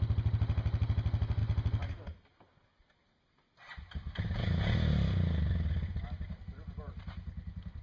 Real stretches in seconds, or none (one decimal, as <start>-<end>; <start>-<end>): 0.0-7.8